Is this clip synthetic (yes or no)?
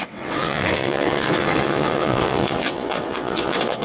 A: yes